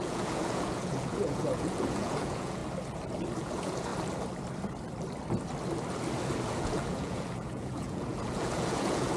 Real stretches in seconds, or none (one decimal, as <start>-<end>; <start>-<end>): 2.6-3.4; 3.9-6.5